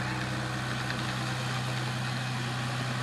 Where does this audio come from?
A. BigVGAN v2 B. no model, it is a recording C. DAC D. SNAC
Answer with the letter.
B